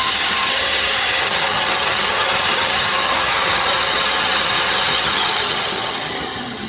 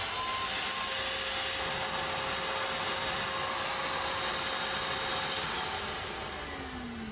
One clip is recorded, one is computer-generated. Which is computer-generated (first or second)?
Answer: first